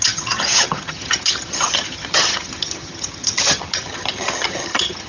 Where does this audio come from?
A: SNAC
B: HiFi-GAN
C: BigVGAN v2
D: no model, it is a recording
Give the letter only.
B